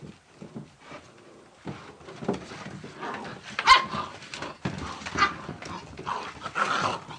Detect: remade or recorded recorded